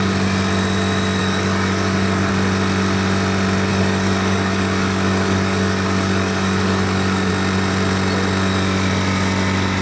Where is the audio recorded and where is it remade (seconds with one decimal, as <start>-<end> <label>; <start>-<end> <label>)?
0.0-1.2 recorded; 1.2-2.3 remade; 2.3-3.7 recorded; 3.7-7.3 remade; 7.3-9.8 recorded